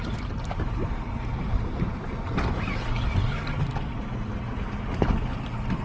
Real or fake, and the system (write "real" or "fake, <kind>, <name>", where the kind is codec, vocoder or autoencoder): real